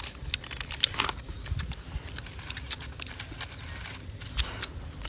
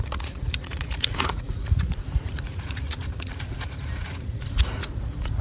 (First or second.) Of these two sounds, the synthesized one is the second